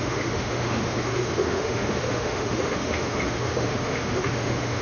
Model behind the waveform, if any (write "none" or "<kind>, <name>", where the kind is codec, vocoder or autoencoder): autoencoder, DAC-VAE